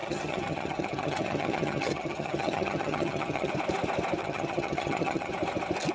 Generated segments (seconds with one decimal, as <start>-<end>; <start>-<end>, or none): 0.0-3.5; 4.2-5.3